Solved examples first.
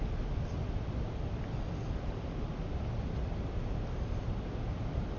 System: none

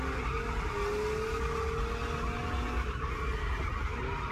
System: none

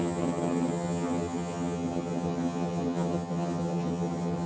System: vocoder, HiFi-GAN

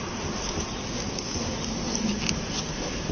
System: none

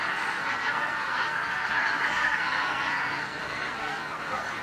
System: codec, SNAC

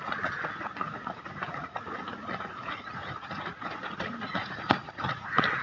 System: vocoder, Vocos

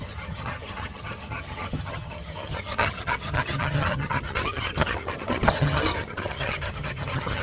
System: vocoder, HiFi-GAN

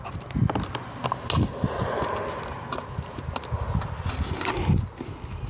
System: none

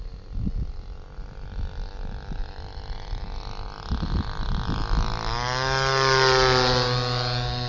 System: none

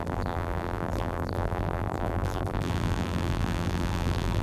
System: vocoder, BigVGAN v2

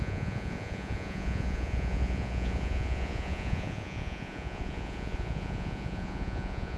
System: vocoder, Vocos